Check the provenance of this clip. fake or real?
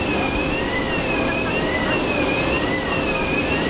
real